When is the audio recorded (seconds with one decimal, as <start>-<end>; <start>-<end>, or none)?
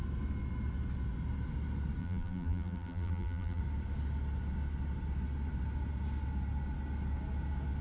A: 0.0-2.0; 3.6-7.8